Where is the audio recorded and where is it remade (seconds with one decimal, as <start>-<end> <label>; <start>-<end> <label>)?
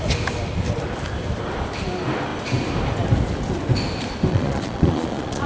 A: 0.0-4.3 recorded; 4.3-5.5 remade